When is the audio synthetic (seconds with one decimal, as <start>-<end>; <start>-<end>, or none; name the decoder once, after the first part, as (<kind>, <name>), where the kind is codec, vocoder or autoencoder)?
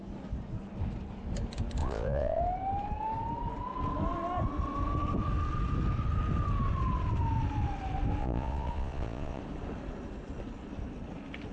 1.8-2.4 (vocoder, Vocos); 8.2-9.4